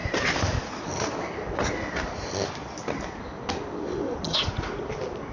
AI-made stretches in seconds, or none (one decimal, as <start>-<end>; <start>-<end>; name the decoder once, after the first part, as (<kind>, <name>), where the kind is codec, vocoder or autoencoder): 4.3-4.8 (vocoder, Vocos)